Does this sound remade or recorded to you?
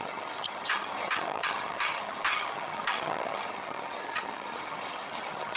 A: remade